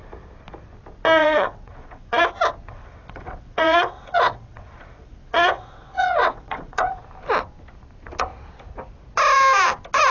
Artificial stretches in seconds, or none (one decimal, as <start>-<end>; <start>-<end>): 1.2-2.2; 2.7-7.0